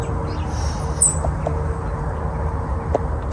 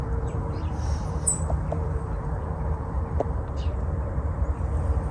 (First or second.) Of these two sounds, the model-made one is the second